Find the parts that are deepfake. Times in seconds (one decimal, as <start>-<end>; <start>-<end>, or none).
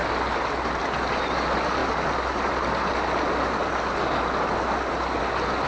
none